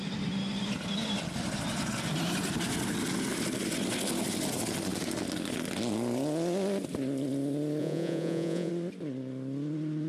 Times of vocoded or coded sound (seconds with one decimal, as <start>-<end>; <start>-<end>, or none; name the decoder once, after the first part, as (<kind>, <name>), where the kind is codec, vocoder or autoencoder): 7.8-8.7 (vocoder, Vocos)